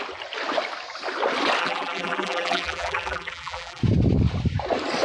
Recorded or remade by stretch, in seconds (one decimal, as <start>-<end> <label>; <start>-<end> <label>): 0.0-1.6 recorded; 1.6-3.8 remade; 3.8-5.0 recorded